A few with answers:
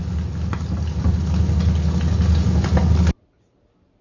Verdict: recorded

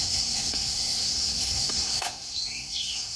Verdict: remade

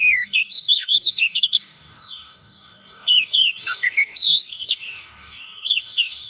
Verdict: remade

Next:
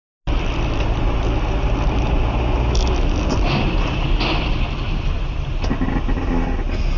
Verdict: recorded